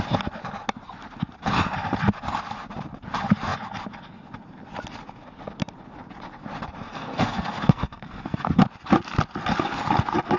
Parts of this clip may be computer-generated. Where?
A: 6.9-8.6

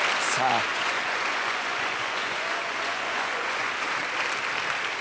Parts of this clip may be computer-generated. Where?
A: 0.7-3.7

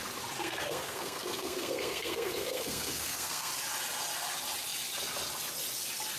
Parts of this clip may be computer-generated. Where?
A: 0.4-3.5

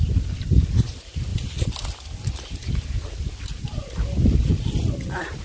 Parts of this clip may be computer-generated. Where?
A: none

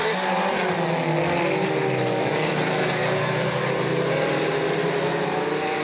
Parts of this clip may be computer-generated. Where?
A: 0.0-0.6; 2.9-5.8

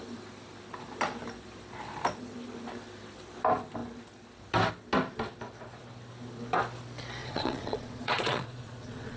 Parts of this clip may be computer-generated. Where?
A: 7.2-9.2

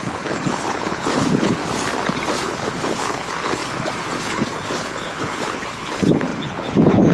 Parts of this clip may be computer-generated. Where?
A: 0.0-1.6; 2.4-3.6; 4.2-7.1

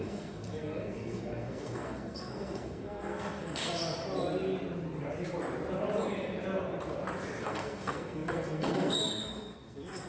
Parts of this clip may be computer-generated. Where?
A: 0.0-3.8; 7.4-10.1